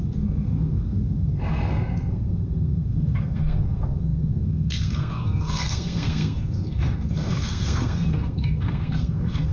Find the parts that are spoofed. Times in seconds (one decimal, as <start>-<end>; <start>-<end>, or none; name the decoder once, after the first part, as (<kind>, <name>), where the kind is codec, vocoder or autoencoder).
0.0-9.5 (codec, SNAC)